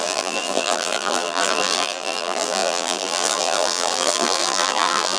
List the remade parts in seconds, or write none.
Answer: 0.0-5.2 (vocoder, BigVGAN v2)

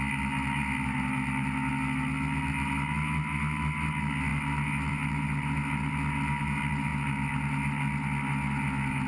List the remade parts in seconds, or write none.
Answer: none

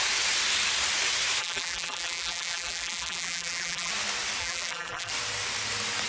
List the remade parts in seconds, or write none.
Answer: 1.4-3.9 (vocoder, BigVGAN v2); 4.4-5.1

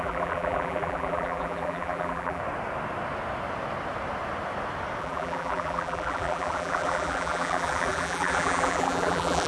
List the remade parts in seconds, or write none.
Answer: 0.0-2.4 (vocoder, BigVGAN v2); 5.0-9.5